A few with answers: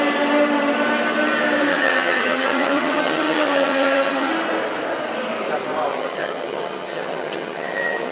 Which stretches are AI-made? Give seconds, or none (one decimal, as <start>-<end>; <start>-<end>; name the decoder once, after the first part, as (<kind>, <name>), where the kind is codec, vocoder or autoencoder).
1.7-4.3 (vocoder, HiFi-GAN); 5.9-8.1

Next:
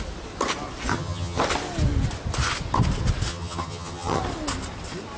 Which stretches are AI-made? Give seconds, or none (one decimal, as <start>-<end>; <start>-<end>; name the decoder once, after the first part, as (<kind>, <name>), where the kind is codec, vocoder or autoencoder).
0.9-1.4 (vocoder, HiFi-GAN); 3.3-4.2

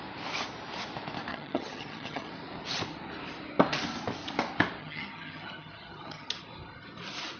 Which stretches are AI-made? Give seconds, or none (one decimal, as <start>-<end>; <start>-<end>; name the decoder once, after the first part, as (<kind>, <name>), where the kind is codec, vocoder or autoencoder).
1.3-2.3 (vocoder, HiFi-GAN); 4.8-6.4

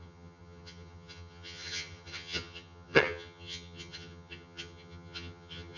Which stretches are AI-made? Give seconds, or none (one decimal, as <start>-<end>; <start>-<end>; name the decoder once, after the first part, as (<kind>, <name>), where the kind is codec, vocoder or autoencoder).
0.0-5.8 (vocoder, HiFi-GAN)

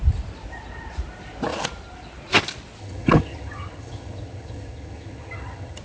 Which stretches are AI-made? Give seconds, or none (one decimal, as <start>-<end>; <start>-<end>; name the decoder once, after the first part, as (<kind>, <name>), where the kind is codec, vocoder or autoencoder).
2.8-5.8 (vocoder, HiFi-GAN)

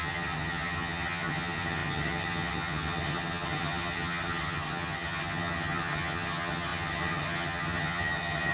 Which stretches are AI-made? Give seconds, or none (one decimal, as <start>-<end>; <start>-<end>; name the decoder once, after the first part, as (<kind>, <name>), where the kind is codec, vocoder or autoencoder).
0.0-8.5 (vocoder, HiFi-GAN)

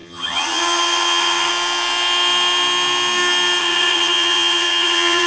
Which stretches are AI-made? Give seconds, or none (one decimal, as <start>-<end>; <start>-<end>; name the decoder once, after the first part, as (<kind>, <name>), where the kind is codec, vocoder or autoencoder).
0.0-1.5 (vocoder, HiFi-GAN); 3.6-5.3

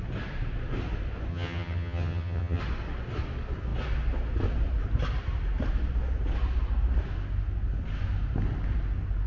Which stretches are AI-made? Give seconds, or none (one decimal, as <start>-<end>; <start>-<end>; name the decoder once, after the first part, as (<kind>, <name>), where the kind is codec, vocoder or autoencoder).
1.3-2.6 (vocoder, HiFi-GAN)